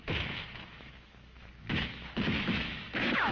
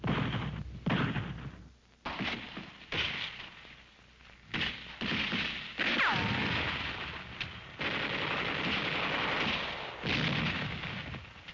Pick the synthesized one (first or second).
first